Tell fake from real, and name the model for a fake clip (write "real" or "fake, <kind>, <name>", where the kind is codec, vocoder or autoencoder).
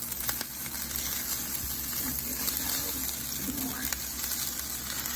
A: real